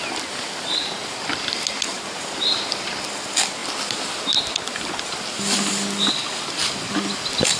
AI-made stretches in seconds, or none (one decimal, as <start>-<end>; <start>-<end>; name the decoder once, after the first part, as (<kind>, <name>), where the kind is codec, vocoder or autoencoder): none